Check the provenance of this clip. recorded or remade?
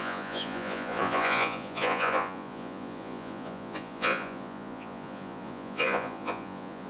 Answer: remade